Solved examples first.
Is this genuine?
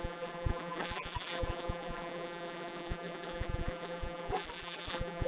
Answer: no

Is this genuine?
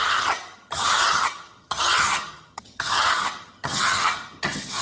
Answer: no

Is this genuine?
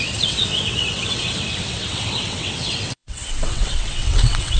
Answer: no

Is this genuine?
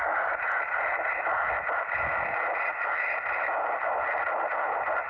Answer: yes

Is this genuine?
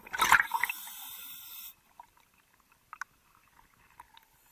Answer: yes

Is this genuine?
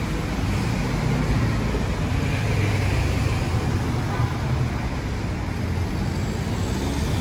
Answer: yes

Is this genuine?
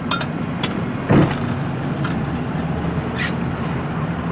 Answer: yes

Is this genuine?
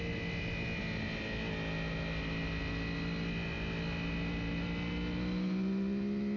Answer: yes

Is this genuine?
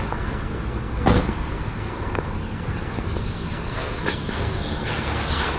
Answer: no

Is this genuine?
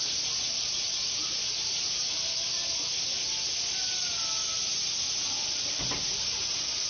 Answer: yes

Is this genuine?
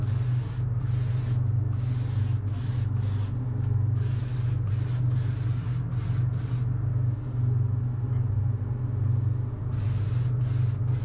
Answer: yes